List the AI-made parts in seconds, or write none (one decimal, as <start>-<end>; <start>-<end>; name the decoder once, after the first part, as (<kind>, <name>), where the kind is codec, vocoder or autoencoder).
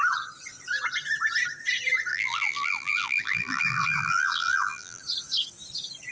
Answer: 2.1-5.0 (vocoder, BigVGAN v2)